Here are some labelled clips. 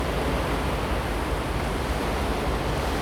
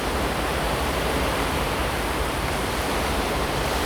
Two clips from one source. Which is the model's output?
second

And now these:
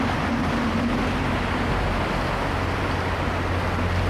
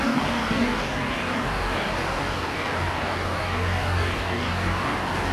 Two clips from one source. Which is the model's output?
second